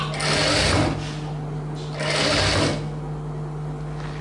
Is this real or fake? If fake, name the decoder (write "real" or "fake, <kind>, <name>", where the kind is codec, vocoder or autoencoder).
real